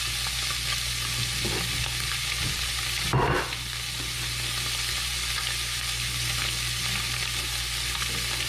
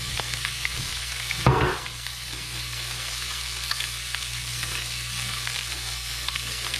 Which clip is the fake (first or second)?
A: second